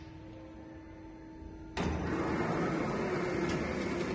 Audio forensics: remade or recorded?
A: recorded